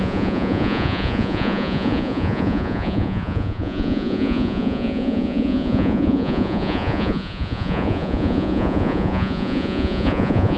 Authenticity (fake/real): fake